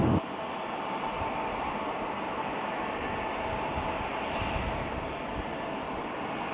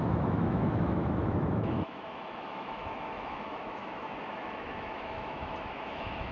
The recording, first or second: first